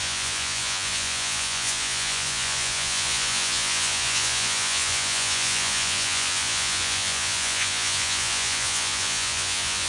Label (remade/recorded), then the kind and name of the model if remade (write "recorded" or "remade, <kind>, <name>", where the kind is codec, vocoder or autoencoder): remade, vocoder, Vocos